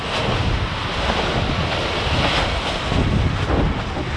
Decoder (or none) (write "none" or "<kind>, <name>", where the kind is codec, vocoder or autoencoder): none